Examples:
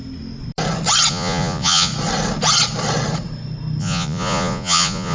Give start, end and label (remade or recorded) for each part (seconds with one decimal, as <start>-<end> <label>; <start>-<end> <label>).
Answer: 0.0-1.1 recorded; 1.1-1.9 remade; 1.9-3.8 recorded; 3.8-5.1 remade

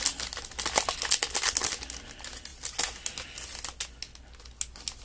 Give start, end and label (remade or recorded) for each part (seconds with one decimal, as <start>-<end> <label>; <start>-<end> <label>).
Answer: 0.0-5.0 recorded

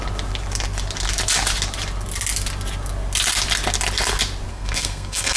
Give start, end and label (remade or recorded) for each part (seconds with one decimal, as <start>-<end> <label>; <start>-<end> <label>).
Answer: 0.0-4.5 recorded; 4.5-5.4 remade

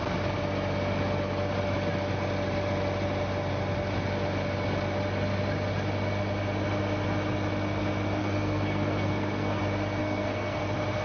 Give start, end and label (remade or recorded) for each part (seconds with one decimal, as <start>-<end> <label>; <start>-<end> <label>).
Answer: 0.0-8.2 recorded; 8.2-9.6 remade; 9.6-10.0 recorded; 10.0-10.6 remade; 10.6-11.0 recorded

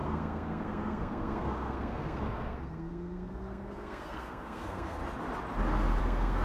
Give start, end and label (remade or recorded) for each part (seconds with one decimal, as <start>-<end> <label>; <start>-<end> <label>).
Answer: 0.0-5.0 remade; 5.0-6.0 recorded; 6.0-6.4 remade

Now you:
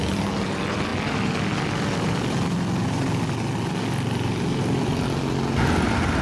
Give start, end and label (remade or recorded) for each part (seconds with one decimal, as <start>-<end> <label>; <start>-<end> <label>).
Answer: 0.0-6.2 recorded

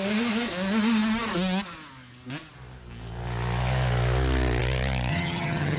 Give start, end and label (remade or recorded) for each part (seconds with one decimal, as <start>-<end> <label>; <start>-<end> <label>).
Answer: 0.0-5.1 recorded; 5.1-5.8 remade